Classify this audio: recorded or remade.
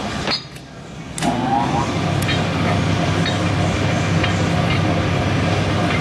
recorded